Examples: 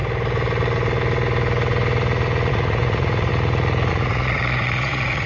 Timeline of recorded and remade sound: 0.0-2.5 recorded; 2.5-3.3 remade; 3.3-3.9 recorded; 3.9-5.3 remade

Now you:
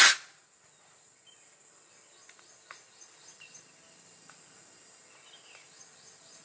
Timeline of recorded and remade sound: 0.0-6.4 recorded

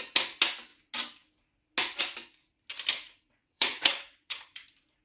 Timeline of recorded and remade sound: 0.0-3.4 recorded; 3.4-4.4 remade; 4.4-5.0 recorded

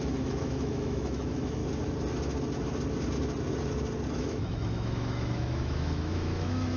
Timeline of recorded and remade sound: 0.0-1.6 remade; 1.6-4.1 recorded; 4.1-6.8 remade